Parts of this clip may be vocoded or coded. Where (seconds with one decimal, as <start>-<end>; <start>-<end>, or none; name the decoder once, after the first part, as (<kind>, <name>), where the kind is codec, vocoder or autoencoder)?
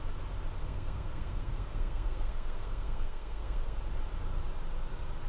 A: 0.6-3.8 (codec, SNAC)